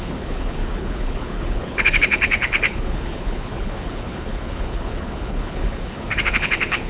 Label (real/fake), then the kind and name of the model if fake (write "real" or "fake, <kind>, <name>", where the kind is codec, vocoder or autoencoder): fake, codec, HILCodec